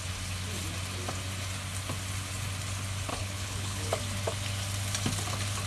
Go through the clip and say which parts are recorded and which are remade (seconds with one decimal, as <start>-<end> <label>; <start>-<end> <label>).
0.0-3.1 recorded; 3.1-4.0 remade; 4.0-5.7 recorded